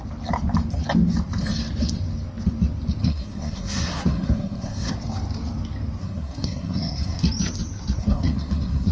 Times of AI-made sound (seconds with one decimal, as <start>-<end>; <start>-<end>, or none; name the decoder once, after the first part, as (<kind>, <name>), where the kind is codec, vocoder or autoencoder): 3.0-4.9 (codec, SNAC); 6.0-7.2; 8.0-8.9